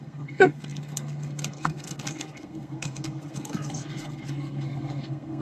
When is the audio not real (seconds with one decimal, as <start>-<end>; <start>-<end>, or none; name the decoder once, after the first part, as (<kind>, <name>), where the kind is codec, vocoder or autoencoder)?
0.0-5.4 (codec, SNAC)